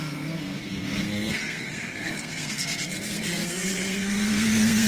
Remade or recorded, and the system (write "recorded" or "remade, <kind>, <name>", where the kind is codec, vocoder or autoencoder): remade, codec, SNAC